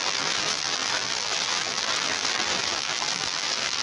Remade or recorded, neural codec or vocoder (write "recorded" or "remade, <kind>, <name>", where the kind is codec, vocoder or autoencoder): remade, vocoder, BigVGAN v2